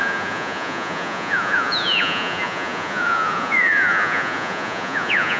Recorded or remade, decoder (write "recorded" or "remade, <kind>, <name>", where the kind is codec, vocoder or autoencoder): remade, vocoder, Vocos